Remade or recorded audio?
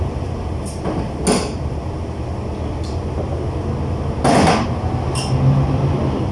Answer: recorded